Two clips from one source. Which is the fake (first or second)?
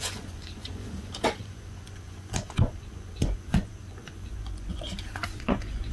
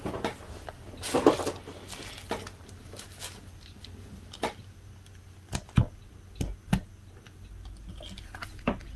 first